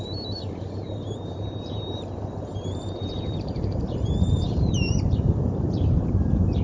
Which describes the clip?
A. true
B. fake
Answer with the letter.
B